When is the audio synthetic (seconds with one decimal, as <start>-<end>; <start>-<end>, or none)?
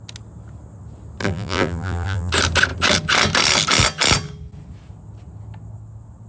1.2-2.3